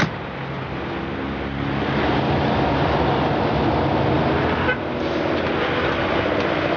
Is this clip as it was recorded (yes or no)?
yes